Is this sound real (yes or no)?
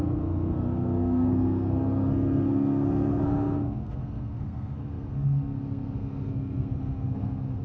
no